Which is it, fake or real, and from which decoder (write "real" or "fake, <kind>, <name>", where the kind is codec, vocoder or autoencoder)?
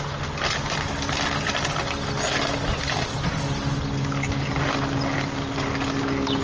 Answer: real